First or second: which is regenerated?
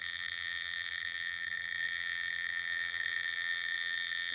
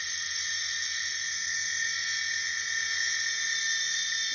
first